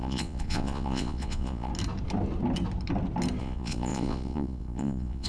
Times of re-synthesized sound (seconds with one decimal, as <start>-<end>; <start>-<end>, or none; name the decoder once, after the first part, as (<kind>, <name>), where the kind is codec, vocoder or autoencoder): 0.0-1.7 (vocoder, Vocos); 3.4-5.3